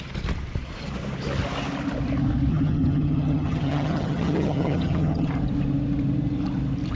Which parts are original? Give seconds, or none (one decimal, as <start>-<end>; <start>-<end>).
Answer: 0.0-2.5; 5.3-7.0